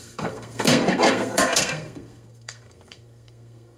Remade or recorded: remade